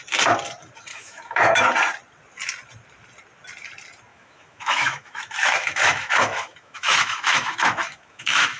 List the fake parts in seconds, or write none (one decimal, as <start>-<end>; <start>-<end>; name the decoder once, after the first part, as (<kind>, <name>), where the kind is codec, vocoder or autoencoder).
0.9-1.6 (autoencoder, DAC-VAE); 4.1-8.6